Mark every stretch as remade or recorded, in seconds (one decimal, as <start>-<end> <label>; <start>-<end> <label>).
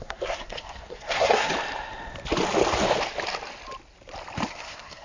0.0-1.5 remade; 1.5-4.5 recorded; 4.5-5.0 remade